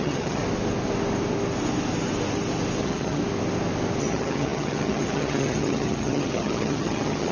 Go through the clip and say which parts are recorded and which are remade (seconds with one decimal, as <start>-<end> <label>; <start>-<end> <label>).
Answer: 0.0-0.4 remade; 0.4-2.8 recorded; 2.8-3.2 remade; 3.2-4.0 recorded; 4.0-7.3 remade